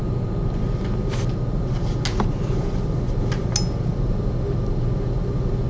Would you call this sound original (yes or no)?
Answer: yes